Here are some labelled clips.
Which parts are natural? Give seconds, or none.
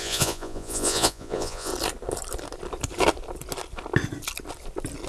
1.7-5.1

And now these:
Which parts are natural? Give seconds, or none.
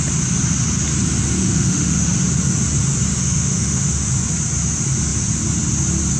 0.0-1.4; 2.1-3.1; 4.1-6.2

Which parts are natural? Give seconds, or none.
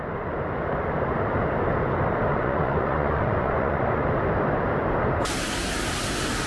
0.0-2.3; 4.1-6.5